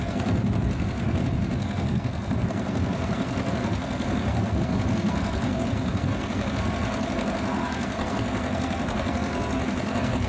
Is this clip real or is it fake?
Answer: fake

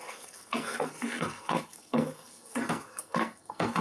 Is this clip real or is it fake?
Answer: fake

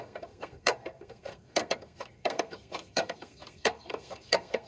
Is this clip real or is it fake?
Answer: fake